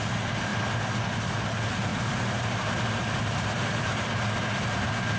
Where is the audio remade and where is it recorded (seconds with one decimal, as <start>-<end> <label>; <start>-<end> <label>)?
0.0-1.9 recorded; 1.9-4.2 remade; 4.2-5.2 recorded